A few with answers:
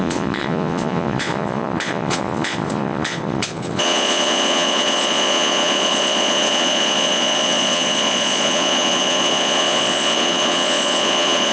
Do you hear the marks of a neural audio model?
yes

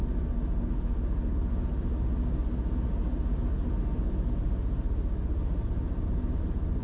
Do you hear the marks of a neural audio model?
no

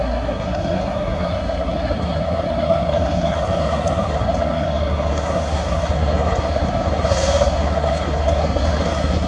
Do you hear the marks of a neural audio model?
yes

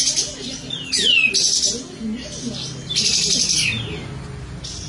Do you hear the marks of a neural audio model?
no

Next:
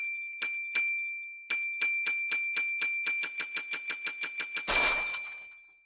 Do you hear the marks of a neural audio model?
no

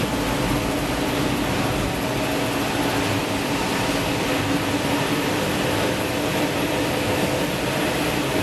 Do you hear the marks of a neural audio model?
no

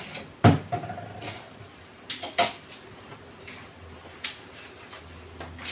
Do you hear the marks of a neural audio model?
no